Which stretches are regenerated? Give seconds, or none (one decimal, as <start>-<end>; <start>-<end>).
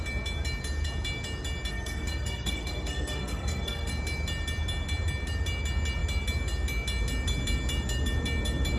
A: 1.7-3.9